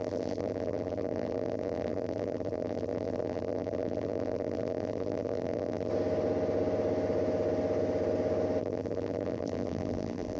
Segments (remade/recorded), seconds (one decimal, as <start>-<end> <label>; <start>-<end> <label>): 0.0-5.9 remade; 5.9-8.6 recorded; 8.6-10.4 remade